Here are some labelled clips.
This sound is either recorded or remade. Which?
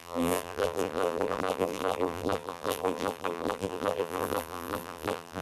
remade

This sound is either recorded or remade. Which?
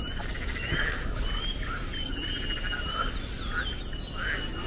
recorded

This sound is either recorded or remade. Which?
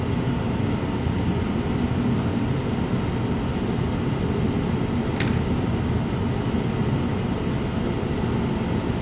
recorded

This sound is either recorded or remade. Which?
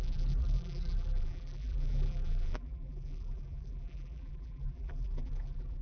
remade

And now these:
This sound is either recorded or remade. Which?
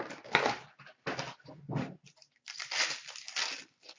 recorded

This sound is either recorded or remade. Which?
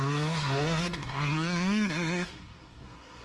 remade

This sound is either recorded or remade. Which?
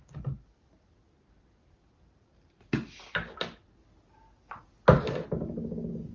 recorded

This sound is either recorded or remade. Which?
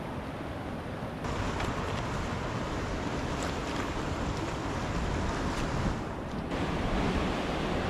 recorded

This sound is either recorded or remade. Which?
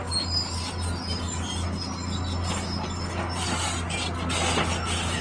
recorded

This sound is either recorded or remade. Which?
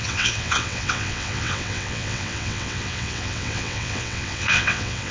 remade